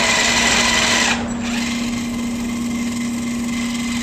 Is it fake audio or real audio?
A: real